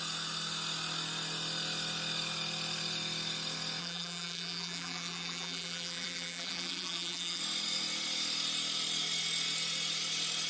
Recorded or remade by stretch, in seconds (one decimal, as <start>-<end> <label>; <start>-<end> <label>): 0.0-3.8 recorded; 3.8-7.4 remade; 7.4-10.5 recorded